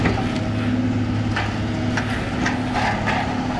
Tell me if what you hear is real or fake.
real